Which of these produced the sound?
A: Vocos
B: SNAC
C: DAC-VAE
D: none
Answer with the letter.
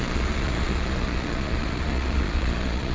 A